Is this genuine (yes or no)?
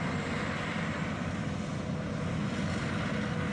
yes